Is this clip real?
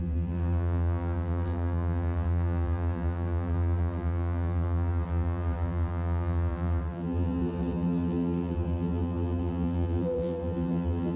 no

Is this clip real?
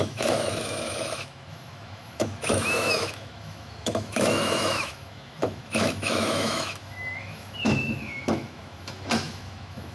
no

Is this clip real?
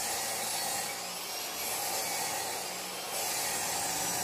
yes